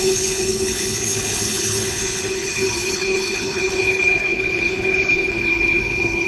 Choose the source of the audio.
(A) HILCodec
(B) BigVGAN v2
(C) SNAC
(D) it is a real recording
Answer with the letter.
A